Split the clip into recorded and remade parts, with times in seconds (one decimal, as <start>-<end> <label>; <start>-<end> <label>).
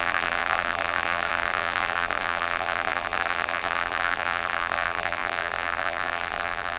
0.0-6.8 remade